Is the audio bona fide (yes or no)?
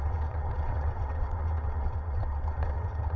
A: no